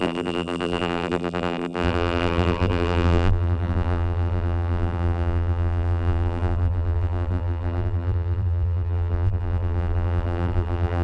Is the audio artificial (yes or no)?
yes